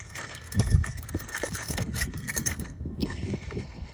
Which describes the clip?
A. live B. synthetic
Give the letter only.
B